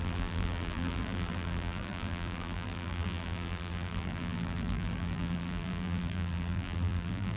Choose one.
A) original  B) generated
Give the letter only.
B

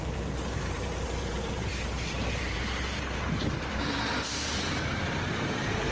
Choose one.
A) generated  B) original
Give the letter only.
A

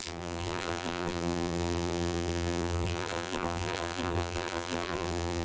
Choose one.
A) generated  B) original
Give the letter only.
A